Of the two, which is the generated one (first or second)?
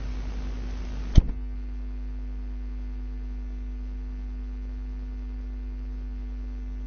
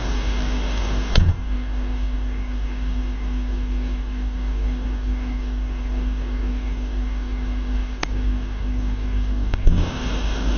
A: second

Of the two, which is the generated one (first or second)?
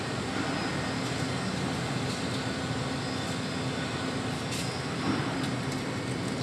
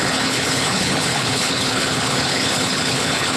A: second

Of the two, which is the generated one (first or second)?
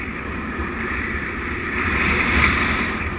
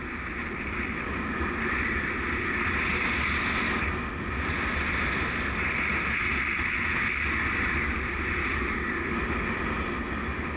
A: first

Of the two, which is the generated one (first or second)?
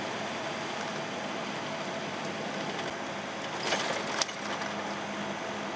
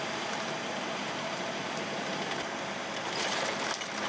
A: second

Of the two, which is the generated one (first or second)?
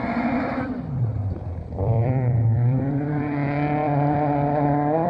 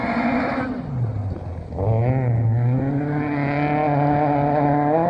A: first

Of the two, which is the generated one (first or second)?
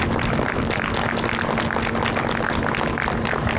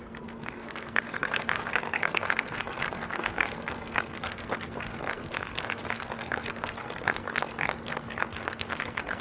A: second